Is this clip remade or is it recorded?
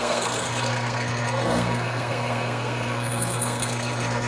remade